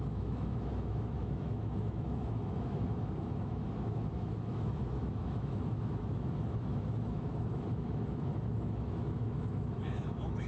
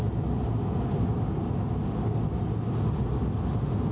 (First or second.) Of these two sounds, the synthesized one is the first